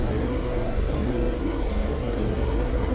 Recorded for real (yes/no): no